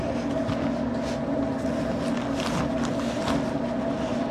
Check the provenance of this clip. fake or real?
real